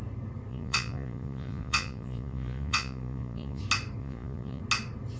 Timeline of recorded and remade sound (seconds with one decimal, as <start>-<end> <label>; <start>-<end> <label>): 0.0-0.5 recorded; 0.5-3.6 remade; 3.6-4.0 recorded; 4.0-4.6 remade; 4.6-5.2 recorded